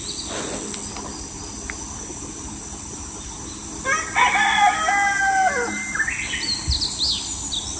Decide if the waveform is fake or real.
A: real